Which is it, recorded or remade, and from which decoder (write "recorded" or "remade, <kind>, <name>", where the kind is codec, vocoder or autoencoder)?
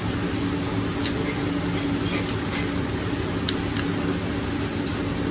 recorded